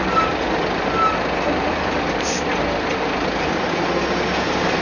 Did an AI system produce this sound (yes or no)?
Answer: no